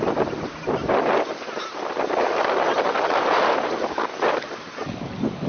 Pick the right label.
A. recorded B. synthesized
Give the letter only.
A